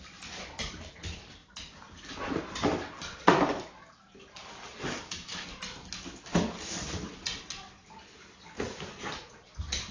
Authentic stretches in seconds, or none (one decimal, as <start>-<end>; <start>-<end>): 0.0-9.9